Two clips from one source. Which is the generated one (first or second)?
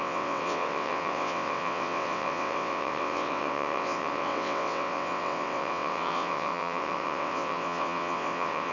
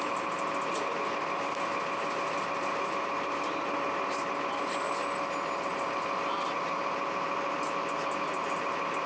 first